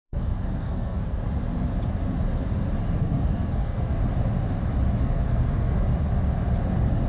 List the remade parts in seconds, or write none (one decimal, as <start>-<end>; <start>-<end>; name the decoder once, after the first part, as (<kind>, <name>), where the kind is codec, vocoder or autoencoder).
0.0-1.2 (codec, SNAC); 3.0-4.0; 5.0-5.9